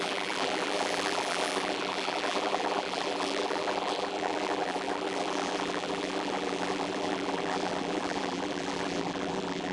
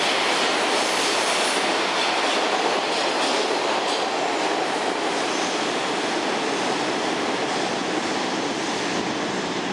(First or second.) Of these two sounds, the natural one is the second